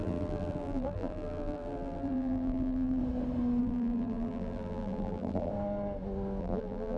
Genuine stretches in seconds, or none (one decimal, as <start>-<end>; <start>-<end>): 3.0-3.6; 5.5-6.4